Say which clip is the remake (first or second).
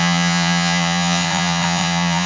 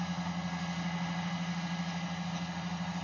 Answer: first